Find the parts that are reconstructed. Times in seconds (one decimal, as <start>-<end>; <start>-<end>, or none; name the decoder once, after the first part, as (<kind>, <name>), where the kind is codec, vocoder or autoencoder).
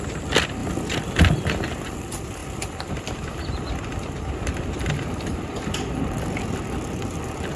0.6-1.3 (vocoder, BigVGAN v2); 2.4-4.9